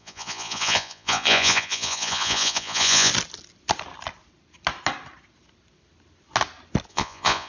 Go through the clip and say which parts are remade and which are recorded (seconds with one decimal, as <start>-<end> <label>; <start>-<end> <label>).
0.0-3.1 remade; 3.1-6.9 recorded; 6.9-7.5 remade